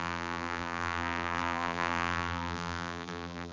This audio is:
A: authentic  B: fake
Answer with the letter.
B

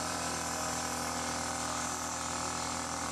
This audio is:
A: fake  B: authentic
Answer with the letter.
A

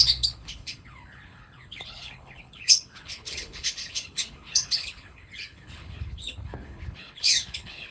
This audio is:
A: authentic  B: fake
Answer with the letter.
B